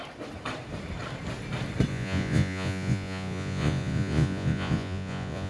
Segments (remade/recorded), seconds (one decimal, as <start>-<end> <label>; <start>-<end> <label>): 0.0-1.9 recorded; 1.9-5.5 remade